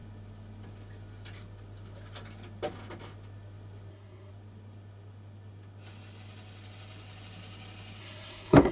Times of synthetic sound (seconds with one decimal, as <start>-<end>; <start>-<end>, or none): 3.9-4.3; 8.0-8.7